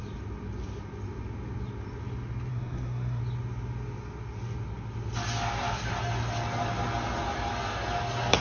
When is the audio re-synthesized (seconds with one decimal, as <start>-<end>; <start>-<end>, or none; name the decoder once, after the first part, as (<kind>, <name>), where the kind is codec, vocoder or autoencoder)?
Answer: 2.5-3.2 (codec, SNAC)